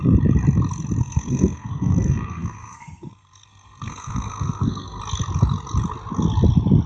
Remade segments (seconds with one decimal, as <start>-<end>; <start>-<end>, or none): 1.0-5.0